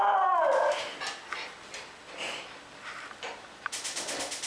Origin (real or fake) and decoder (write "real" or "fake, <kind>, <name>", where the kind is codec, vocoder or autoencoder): real